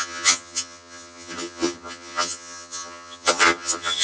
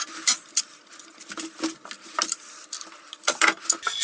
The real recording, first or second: second